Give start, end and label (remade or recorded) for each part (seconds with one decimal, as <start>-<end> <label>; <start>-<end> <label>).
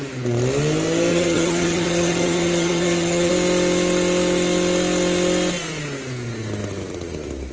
0.0-1.1 recorded; 1.1-3.3 remade; 3.3-7.5 recorded